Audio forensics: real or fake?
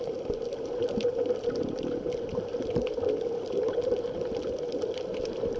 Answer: real